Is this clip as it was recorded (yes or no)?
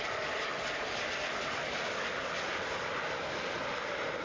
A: yes